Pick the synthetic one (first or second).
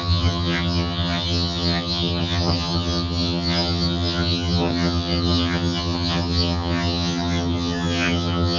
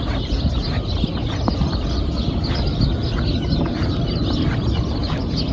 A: first